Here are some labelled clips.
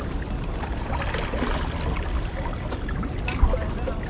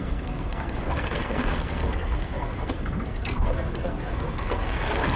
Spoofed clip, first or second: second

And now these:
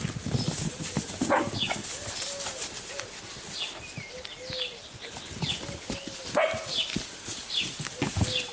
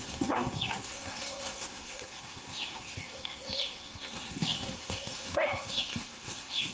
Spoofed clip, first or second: second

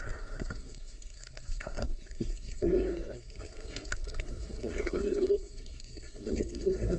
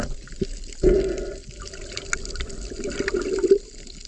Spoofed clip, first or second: first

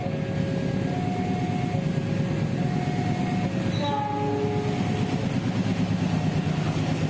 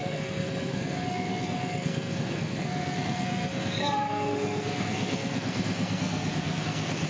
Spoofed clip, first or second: second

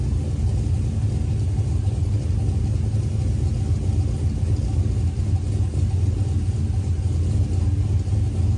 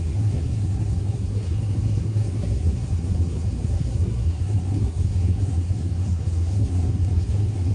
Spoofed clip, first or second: second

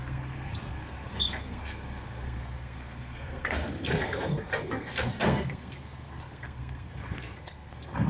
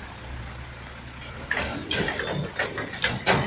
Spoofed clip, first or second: first